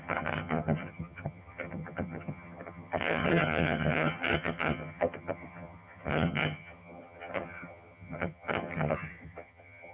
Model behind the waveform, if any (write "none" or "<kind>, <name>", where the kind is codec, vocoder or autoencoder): vocoder, HiFi-GAN